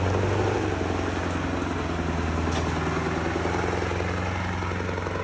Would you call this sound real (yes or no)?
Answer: yes